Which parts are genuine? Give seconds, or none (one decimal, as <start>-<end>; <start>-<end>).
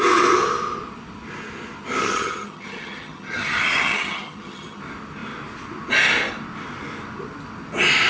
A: 0.0-2.0; 4.8-8.1